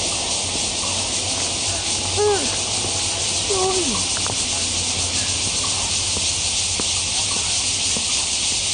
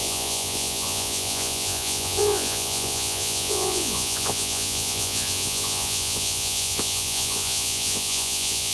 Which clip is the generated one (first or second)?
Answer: second